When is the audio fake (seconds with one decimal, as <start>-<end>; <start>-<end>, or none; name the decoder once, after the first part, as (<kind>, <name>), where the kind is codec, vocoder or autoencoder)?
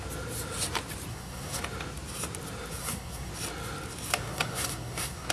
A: 1.1-1.6 (codec, SNAC); 2.8-3.3; 4.2-5.3